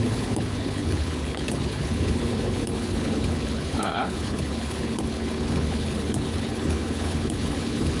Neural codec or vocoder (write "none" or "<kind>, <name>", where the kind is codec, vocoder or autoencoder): codec, HILCodec